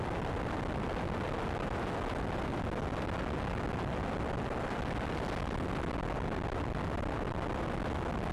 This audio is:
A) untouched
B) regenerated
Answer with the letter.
A